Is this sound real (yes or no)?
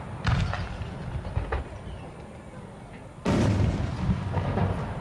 yes